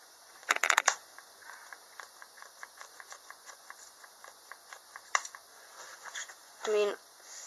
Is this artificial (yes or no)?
yes